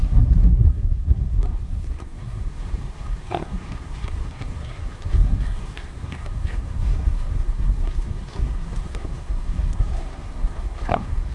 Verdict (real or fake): fake